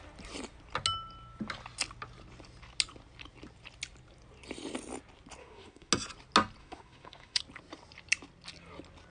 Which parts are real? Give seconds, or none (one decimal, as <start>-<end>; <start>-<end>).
0.0-5.4; 5.9-6.6; 7.4-9.1